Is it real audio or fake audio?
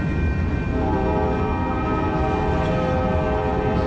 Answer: real